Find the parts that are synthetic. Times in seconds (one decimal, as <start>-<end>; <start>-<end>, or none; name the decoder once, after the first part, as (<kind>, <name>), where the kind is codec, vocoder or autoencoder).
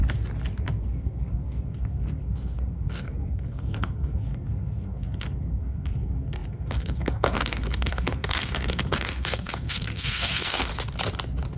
0.7-10.7 (codec, SNAC)